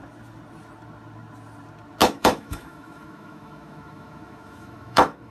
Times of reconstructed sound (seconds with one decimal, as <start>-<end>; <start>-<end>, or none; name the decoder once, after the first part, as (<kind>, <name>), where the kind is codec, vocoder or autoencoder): 2.0-5.3 (autoencoder, DAC-VAE)